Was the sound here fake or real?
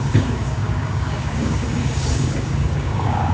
fake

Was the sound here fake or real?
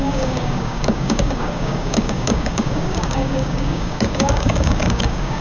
fake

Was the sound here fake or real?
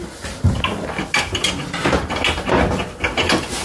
real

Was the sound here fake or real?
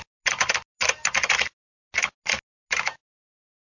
real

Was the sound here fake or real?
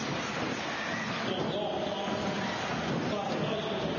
real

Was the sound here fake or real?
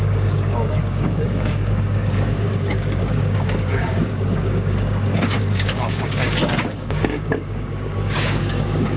fake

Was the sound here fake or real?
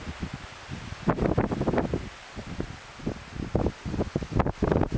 real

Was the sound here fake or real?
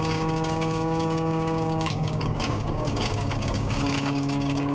fake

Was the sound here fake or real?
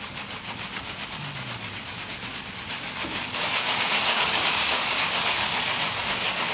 fake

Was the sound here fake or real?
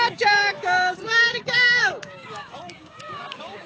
fake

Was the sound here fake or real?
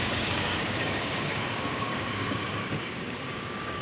fake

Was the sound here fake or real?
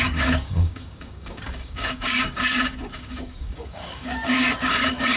fake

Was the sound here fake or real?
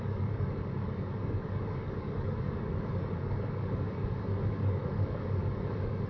fake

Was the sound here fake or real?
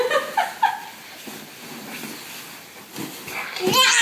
real